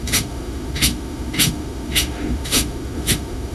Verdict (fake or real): fake